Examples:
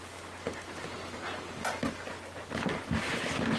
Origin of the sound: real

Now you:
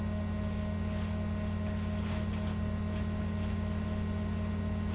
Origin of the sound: real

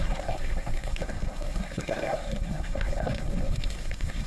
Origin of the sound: fake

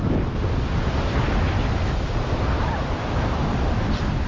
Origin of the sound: real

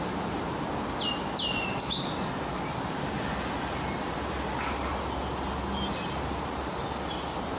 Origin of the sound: real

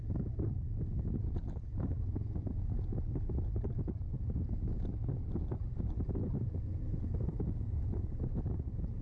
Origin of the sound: real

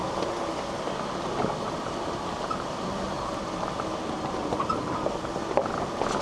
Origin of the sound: real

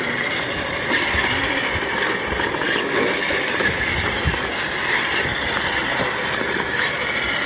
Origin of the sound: real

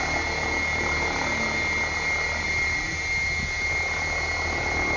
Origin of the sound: real